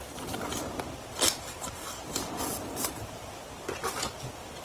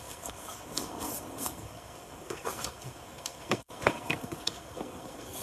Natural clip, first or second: first